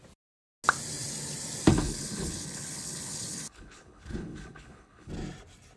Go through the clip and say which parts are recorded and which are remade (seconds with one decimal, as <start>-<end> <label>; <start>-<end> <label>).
0.0-1.7 recorded; 1.7-5.1 remade; 5.1-5.8 recorded